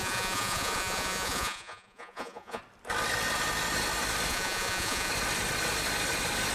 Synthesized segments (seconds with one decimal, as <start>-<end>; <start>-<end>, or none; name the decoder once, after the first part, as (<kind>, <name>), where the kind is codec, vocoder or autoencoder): 0.0-2.6 (vocoder, Vocos); 4.3-5.1